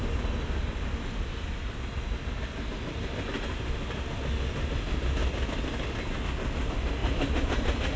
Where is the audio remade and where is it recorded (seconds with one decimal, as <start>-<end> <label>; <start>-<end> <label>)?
0.0-8.0 recorded